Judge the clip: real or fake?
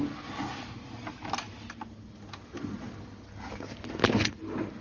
real